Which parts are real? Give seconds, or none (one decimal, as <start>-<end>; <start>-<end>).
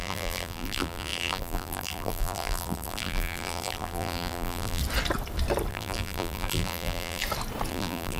4.8-5.7; 7.2-7.7